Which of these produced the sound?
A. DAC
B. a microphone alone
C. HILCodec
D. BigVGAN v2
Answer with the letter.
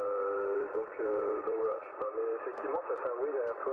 D